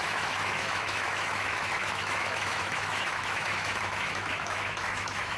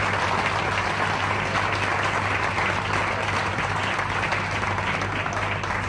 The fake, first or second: first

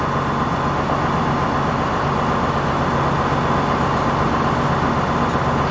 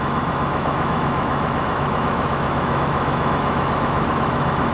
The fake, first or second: second